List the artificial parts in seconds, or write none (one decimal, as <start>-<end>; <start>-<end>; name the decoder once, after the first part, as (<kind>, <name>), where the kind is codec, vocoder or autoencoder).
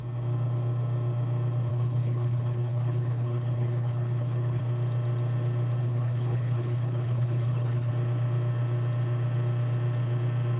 1.7-4.6 (codec, HILCodec); 5.8-7.9